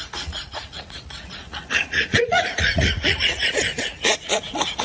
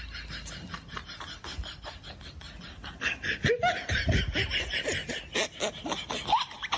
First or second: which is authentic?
second